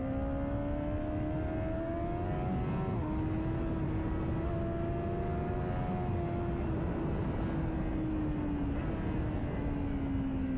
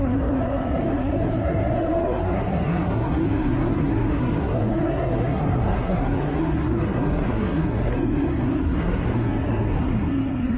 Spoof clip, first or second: second